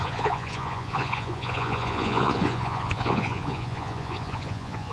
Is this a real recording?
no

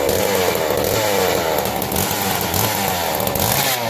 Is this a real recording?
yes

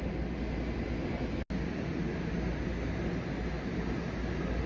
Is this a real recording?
yes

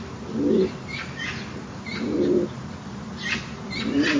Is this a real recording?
yes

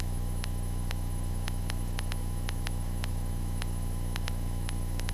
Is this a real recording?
no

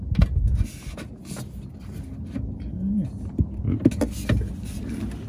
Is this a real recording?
yes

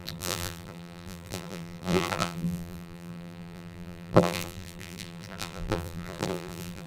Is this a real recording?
no